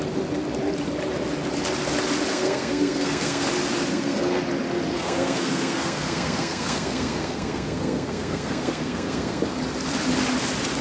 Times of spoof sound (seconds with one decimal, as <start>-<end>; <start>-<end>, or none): 2.3-3.5; 3.9-4.4; 4.9-9.4